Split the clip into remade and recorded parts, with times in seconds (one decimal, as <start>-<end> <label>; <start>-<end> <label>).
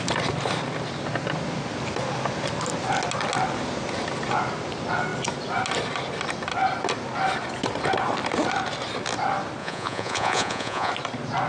0.0-9.6 recorded; 9.6-10.9 remade; 10.9-11.5 recorded